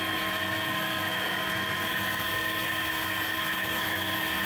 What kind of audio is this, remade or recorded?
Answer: remade